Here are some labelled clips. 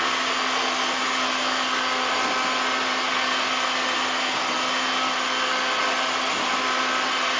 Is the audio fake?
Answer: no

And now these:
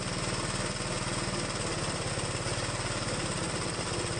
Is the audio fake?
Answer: no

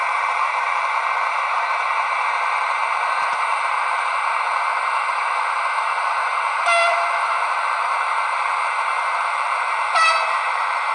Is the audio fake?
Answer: yes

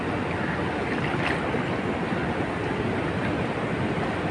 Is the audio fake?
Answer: no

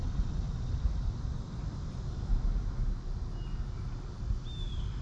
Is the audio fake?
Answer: no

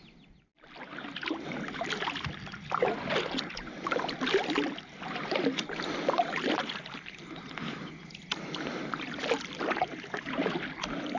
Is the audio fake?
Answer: no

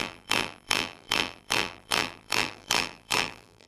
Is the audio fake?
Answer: yes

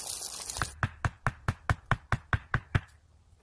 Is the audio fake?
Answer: no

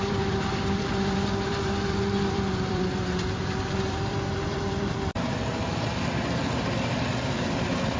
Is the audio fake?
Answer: yes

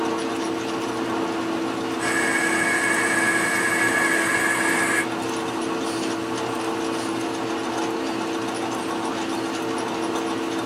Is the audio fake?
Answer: no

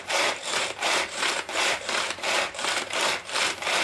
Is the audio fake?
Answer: yes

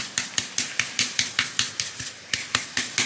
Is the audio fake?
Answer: no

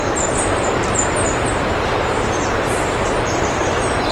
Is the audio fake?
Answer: yes